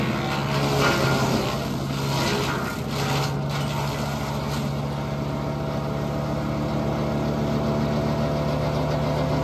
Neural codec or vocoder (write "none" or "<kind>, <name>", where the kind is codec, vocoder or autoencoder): none